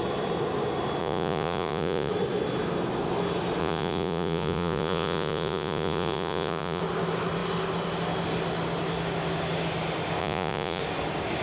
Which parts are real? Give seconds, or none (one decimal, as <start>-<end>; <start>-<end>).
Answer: 0.0-1.0; 2.1-3.6; 6.8-10.2; 10.8-11.4